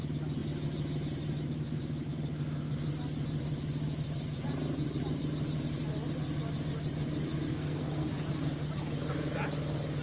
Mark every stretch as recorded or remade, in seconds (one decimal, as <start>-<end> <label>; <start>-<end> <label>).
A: 0.0-7.5 recorded; 7.5-8.1 remade; 8.1-10.0 recorded